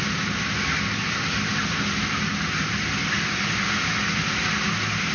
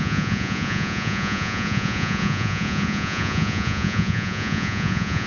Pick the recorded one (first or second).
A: first